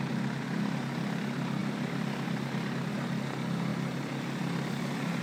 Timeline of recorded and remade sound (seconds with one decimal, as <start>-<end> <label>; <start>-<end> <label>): 0.0-5.2 recorded